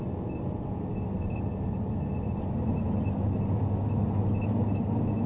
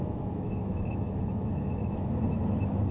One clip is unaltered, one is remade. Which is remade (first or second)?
second